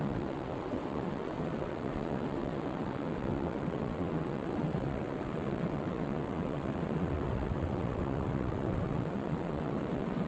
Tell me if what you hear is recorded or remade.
remade